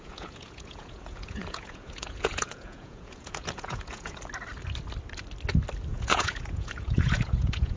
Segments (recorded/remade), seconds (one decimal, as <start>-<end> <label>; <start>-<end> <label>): 0.0-4.2 remade; 4.2-5.9 recorded; 5.9-7.8 remade